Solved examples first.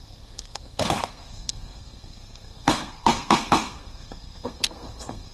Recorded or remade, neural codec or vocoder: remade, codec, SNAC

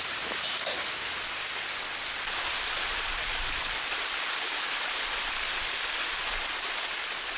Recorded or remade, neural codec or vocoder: recorded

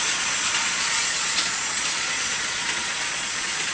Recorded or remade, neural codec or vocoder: remade, vocoder, Vocos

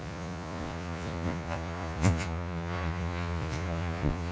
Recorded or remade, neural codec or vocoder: remade, vocoder, Vocos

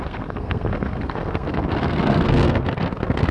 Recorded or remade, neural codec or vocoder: remade, codec, SNAC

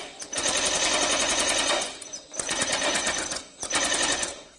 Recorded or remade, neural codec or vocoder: remade, vocoder, Vocos